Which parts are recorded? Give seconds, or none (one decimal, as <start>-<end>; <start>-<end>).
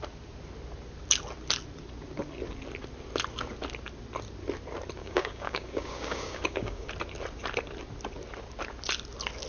0.0-5.0; 6.9-9.5